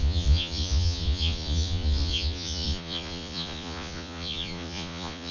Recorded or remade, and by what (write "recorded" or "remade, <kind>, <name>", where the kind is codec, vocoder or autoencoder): remade, vocoder, Vocos